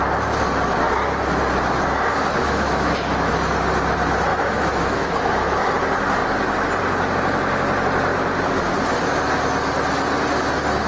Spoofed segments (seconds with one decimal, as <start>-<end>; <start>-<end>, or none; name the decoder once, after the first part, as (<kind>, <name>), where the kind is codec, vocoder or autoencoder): 2.4-3.3 (autoencoder, DAC-VAE); 4.3-5.7